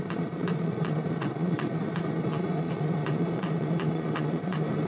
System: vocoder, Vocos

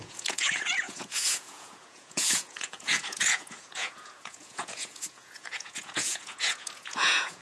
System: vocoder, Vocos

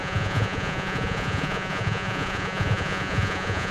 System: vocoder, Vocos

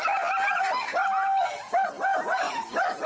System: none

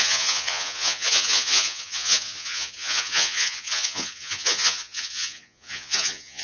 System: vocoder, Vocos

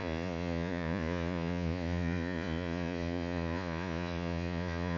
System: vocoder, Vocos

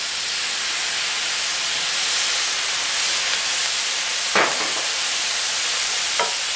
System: none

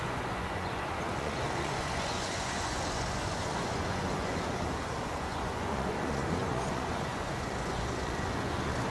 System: vocoder, Vocos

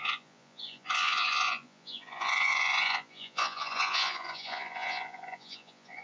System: vocoder, Vocos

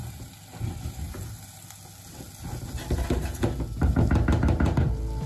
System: none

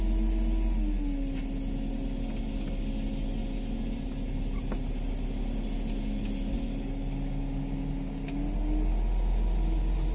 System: none